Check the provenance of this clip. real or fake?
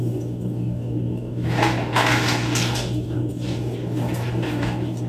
fake